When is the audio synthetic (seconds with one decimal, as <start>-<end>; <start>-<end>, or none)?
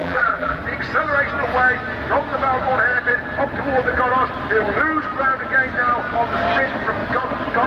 0.0-0.6